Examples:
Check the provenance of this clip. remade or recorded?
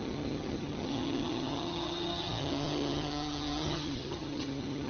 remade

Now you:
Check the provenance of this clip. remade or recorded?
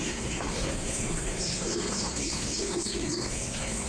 remade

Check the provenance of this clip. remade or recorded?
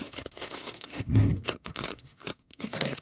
remade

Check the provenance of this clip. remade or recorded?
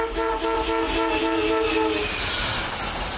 recorded